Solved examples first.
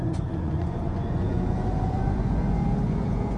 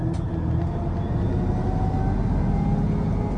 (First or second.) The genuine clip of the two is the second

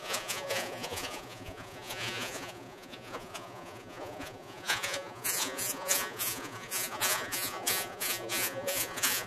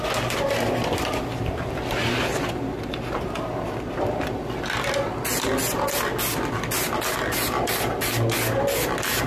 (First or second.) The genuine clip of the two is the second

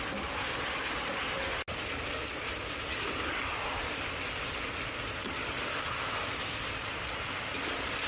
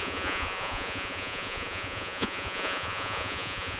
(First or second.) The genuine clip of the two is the first